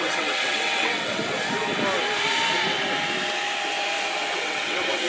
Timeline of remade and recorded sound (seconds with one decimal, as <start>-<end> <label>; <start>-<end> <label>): 0.0-1.2 remade; 1.2-4.3 recorded; 4.3-5.1 remade